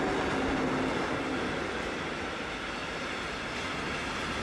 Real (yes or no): yes